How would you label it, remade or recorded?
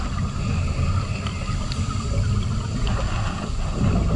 recorded